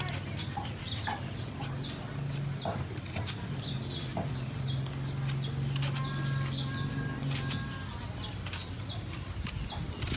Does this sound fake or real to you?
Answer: real